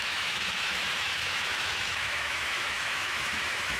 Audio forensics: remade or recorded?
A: remade